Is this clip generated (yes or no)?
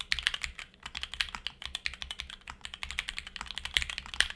no